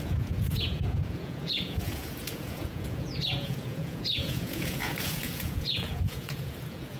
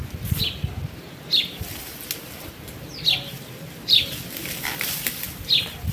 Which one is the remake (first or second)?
first